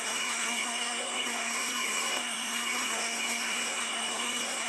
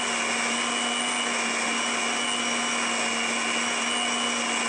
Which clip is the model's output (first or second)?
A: first